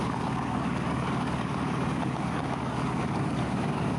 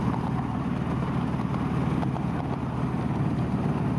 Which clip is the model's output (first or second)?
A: first